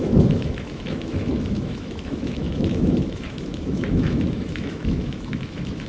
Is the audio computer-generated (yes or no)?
yes